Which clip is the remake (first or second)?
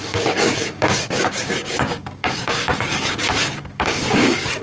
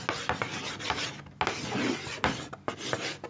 first